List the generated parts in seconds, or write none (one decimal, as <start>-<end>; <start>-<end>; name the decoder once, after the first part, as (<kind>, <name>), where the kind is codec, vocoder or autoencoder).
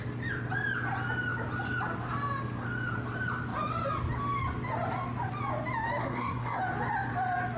6.0-6.6 (codec, SNAC)